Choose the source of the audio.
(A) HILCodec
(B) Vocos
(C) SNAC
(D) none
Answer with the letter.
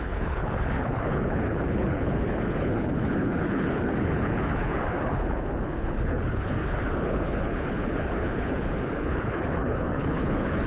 A